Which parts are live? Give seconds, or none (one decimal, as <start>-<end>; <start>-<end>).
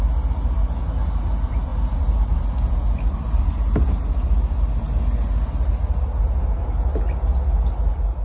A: 0.0-8.2